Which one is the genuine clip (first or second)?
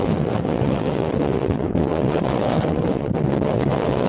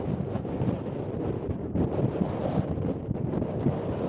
second